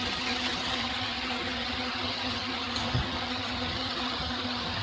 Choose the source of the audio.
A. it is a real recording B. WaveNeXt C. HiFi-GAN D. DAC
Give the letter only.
C